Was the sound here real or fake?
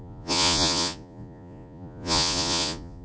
fake